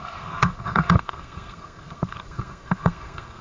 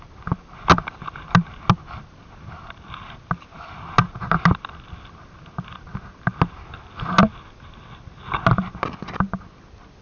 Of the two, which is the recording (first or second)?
second